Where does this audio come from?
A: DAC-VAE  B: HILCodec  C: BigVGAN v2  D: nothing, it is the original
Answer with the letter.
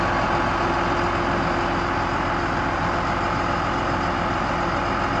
D